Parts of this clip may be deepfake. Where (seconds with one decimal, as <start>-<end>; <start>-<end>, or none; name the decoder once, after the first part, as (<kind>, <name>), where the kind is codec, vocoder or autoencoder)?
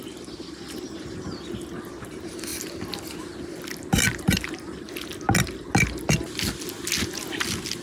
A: none